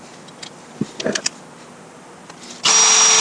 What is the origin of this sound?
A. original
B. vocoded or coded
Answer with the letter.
A